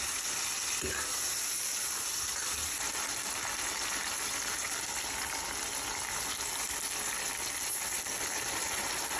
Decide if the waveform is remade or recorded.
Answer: recorded